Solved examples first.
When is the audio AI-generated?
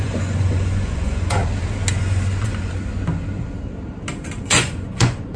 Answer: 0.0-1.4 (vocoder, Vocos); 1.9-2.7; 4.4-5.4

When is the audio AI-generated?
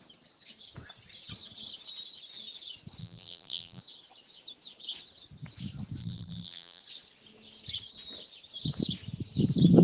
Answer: 3.0-3.8 (vocoder, BigVGAN v2); 6.0-6.8